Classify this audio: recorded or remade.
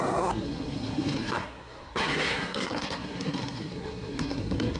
remade